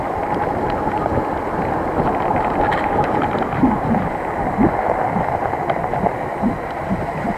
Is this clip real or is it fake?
real